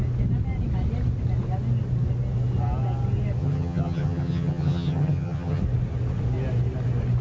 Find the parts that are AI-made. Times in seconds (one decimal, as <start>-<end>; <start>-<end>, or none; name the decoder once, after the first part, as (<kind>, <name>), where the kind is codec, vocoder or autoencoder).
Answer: 3.4-5.6 (vocoder, HiFi-GAN)